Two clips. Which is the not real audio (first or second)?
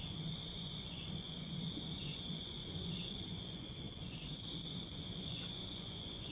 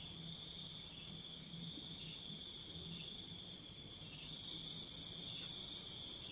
first